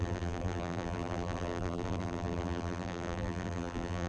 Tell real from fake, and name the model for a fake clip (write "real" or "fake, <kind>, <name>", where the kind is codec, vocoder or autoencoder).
fake, vocoder, BigVGAN v2